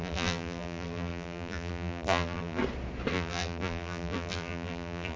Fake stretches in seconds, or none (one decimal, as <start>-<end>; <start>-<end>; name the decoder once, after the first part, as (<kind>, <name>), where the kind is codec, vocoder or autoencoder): 0.0-2.6 (vocoder, BigVGAN v2); 3.1-5.2